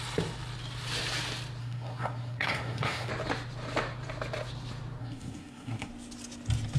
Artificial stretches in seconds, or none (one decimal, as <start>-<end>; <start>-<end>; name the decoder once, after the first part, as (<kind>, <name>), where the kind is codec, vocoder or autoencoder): 1.6-3.1 (codec, SNAC); 5.0-5.9

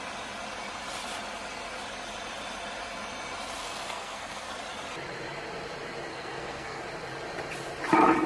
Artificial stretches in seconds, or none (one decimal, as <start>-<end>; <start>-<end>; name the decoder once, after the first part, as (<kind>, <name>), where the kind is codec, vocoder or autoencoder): 3.6-4.5 (codec, SNAC); 6.1-6.8

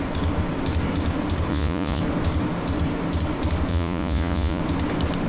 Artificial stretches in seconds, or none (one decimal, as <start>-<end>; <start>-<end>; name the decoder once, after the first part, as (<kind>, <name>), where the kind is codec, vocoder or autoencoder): 1.5-2.0 (vocoder, Vocos); 3.7-4.6

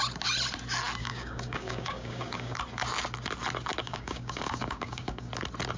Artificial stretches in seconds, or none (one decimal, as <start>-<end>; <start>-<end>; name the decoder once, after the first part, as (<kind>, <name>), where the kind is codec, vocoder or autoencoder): 1.0-2.6 (codec, DAC); 3.8-5.3

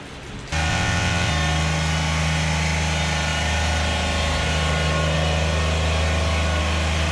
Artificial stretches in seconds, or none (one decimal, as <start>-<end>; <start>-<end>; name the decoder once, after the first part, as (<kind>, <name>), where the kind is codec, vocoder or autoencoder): 0.7-1.3 (vocoder, WaveNeXt)

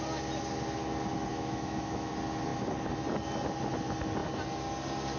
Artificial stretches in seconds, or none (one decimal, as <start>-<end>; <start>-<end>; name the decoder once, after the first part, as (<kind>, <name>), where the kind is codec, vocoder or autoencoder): 1.3-2.1 (autoencoder, DAC-VAE)

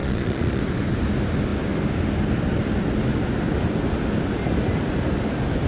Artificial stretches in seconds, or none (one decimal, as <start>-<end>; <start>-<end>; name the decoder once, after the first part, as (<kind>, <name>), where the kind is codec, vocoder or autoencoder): 0.0-0.6 (vocoder, Vocos)

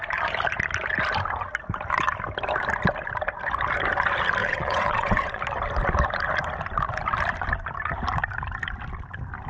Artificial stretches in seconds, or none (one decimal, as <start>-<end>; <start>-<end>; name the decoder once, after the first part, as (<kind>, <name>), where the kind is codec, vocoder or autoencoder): 4.4-5.4 (vocoder, WaveNeXt)